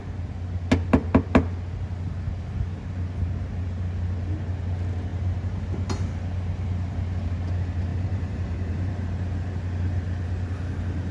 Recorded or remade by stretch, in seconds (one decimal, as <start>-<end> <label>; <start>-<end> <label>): 0.0-5.1 recorded; 5.1-5.9 remade; 5.9-7.9 recorded; 7.9-8.9 remade; 8.9-11.1 recorded